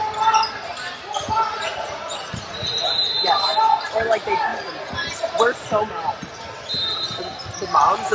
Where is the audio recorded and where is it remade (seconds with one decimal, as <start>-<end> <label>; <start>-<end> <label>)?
0.0-1.5 recorded; 1.5-2.9 remade; 2.9-8.1 recorded